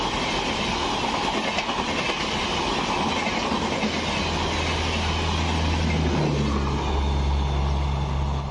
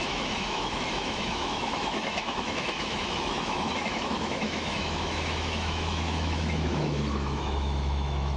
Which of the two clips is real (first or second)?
first